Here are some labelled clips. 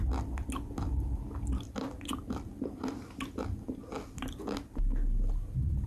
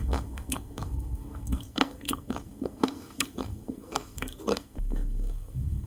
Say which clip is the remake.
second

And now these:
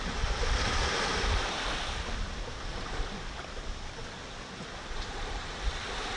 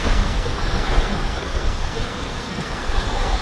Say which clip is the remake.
second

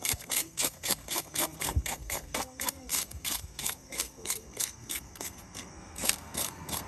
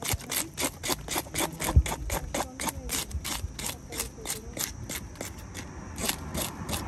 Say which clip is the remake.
first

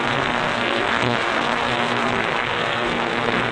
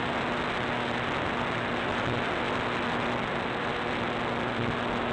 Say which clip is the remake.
first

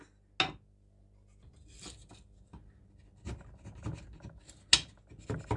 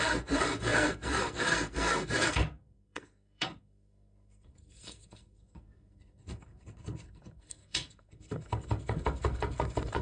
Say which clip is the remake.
second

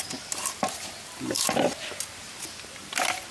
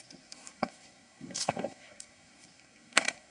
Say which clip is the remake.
second